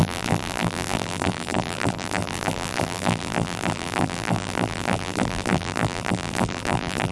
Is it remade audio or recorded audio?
remade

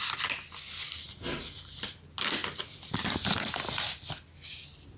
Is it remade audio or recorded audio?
recorded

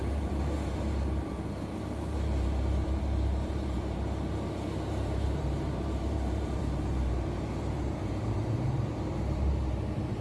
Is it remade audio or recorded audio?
remade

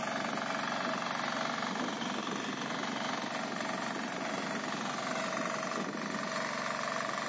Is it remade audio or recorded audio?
recorded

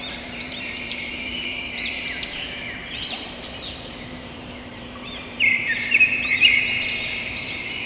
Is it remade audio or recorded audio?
remade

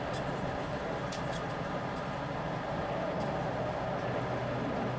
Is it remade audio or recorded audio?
recorded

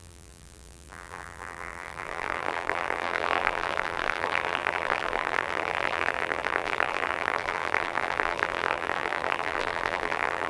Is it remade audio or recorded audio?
remade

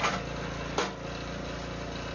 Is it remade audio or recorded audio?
recorded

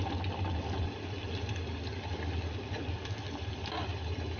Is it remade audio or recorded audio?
recorded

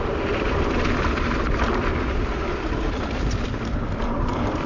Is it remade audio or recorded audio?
remade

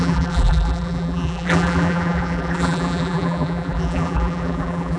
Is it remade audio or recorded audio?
remade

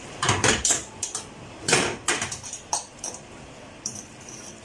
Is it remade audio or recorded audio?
remade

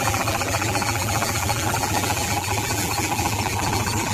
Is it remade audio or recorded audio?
remade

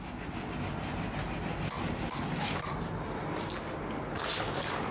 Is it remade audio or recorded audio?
recorded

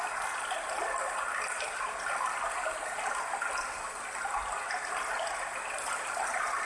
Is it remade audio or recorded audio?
recorded